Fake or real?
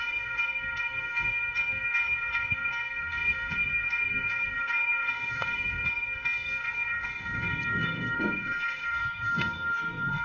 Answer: fake